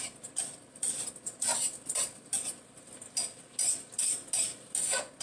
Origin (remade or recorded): recorded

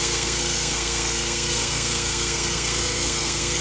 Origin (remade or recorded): remade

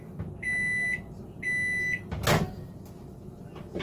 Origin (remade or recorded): recorded